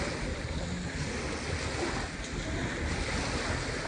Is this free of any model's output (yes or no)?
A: yes